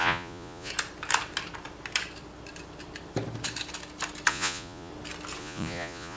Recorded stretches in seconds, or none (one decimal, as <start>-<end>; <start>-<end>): 0.7-4.3; 4.9-5.4